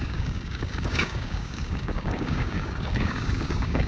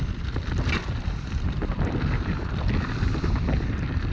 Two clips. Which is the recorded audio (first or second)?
second